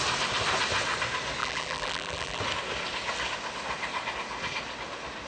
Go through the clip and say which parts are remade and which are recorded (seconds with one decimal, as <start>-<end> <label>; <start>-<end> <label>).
0.0-1.4 recorded; 1.4-2.4 remade; 2.4-5.3 recorded